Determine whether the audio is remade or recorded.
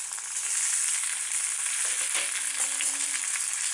recorded